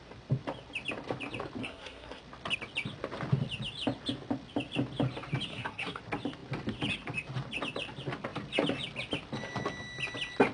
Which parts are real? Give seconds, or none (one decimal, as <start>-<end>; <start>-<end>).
0.0-1.6; 2.2-5.5; 6.0-10.5